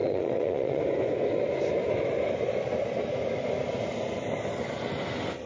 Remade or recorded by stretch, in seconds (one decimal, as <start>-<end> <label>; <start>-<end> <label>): 0.0-0.8 remade; 0.8-5.5 recorded